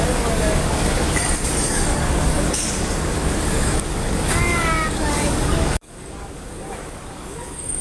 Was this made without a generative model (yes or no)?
no